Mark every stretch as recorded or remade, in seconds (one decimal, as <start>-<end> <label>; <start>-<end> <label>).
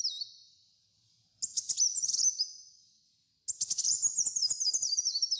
0.0-5.4 recorded